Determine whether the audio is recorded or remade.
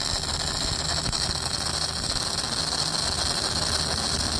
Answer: recorded